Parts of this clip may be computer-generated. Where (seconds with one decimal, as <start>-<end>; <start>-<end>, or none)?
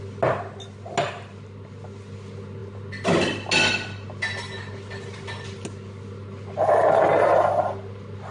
none